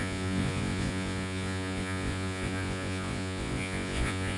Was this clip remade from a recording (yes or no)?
yes